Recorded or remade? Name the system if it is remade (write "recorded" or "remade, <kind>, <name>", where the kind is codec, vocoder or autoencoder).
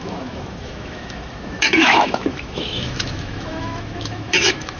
remade, autoencoder, DAC-VAE